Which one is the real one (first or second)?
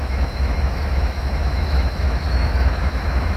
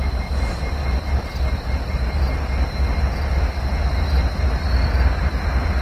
second